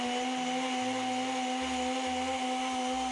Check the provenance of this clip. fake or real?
real